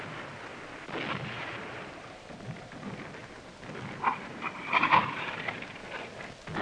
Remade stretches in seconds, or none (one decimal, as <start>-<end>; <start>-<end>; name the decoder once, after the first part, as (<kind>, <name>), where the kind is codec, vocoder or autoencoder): 0.0-0.5 (vocoder, BigVGAN v2); 1.1-3.2; 4.1-5.8